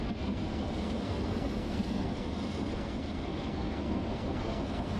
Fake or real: fake